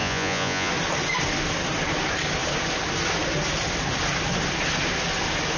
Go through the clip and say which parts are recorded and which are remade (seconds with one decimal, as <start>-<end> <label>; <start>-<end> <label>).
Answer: 0.0-0.7 remade; 0.7-5.6 recorded